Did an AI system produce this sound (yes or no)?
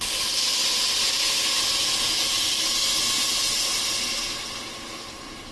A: no